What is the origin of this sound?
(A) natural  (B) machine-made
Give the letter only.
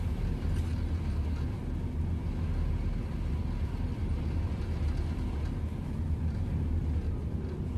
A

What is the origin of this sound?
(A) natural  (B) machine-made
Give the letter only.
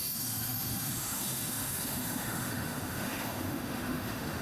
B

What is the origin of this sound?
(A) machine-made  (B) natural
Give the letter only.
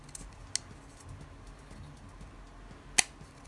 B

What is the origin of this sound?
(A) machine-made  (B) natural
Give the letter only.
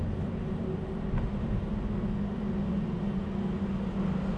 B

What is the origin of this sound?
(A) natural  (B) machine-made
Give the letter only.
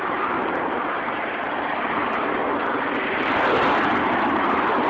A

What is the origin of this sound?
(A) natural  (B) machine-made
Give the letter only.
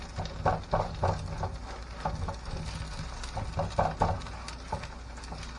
A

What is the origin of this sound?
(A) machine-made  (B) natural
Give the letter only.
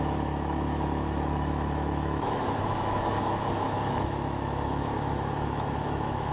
A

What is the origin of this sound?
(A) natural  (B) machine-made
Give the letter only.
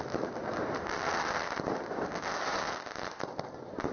A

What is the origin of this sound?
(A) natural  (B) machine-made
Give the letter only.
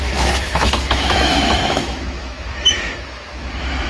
B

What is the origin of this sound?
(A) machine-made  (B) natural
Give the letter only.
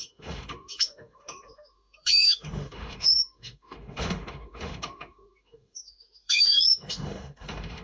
A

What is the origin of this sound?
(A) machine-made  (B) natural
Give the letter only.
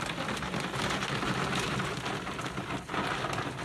B